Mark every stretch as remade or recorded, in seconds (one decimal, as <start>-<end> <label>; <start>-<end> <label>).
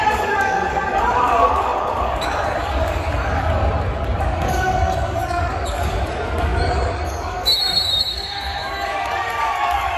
0.0-3.6 remade; 3.6-4.2 recorded; 4.2-10.0 remade